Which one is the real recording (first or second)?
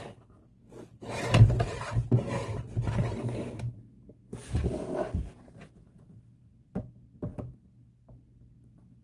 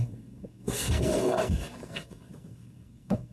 first